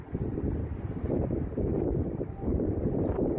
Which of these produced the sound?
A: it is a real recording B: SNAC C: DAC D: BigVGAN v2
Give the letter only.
A